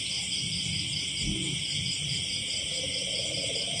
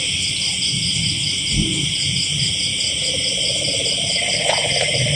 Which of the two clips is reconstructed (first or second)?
second